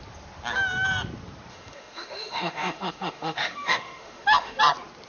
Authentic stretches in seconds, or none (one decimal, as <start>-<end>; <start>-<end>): 0.0-1.5; 4.6-5.1